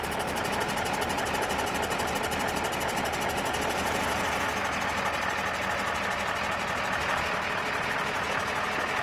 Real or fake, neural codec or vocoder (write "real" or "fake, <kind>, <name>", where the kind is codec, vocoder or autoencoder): real